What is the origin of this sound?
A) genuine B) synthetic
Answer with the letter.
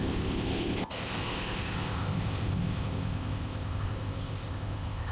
B